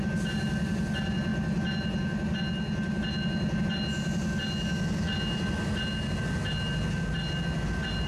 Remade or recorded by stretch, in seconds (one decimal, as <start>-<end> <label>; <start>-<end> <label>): 0.0-8.1 recorded